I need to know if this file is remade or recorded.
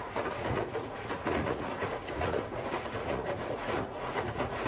remade